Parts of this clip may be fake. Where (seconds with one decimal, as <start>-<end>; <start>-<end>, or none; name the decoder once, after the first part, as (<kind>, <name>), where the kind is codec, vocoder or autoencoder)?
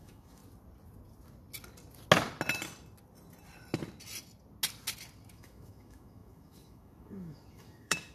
0.0-0.4 (autoencoder, DAC-VAE); 5.3-8.1